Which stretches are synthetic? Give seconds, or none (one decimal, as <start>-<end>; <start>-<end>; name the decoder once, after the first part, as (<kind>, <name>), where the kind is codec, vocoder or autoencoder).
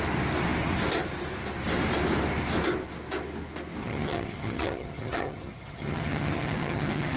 3.8-7.2 (vocoder, HiFi-GAN)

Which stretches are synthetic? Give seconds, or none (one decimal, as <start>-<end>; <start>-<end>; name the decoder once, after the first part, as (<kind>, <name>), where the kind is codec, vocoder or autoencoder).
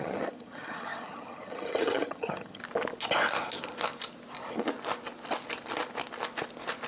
0.0-2.6 (vocoder, HiFi-GAN)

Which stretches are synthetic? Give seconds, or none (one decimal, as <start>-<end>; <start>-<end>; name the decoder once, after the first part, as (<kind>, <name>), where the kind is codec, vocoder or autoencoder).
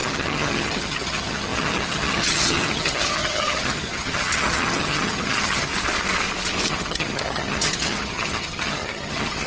0.0-5.7 (vocoder, HiFi-GAN); 6.7-9.5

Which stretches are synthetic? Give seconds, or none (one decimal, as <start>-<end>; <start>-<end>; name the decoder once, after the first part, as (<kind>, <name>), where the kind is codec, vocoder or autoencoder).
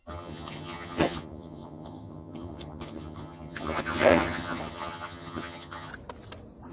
0.0-5.9 (vocoder, HiFi-GAN)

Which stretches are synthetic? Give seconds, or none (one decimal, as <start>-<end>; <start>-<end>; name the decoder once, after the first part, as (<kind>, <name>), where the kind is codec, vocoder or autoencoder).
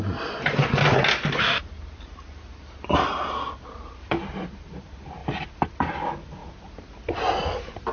none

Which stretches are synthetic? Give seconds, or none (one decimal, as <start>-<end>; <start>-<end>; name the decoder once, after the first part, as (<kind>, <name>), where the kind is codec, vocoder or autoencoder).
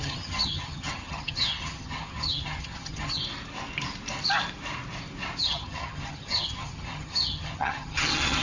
0.0-3.2 (vocoder, HiFi-GAN); 5.4-8.4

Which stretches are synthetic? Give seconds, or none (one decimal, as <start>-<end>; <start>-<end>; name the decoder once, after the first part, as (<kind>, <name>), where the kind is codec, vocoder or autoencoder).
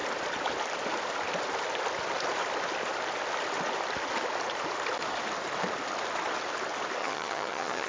7.0-7.9 (vocoder, HiFi-GAN)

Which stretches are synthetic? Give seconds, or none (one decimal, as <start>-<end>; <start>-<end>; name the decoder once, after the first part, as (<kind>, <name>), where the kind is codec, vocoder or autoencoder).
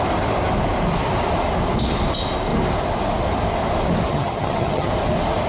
4.1-4.9 (vocoder, HiFi-GAN)